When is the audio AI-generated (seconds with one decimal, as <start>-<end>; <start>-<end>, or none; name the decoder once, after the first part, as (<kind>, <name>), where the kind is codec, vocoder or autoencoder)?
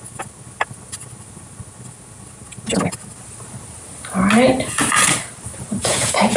5.8-6.4 (vocoder, Vocos)